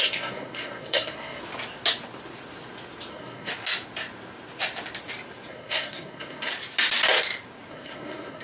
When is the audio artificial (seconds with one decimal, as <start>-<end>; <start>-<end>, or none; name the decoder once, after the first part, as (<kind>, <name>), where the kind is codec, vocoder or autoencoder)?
0.0-1.4 (codec, SNAC); 3.1-3.5; 5.5-6.5; 7.7-8.4